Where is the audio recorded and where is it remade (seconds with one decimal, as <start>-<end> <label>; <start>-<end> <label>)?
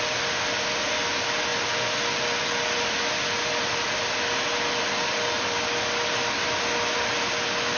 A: 0.0-7.8 recorded